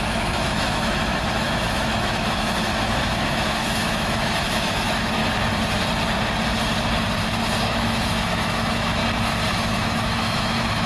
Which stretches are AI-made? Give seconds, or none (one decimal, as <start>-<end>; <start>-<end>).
0.0-5.2; 7.7-9.0; 9.6-10.9

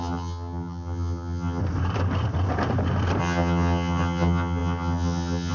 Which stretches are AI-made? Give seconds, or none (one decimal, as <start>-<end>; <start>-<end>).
0.0-1.6; 3.2-5.5

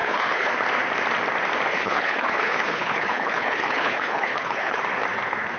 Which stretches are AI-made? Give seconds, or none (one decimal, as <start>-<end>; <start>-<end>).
0.0-0.5; 1.7-4.8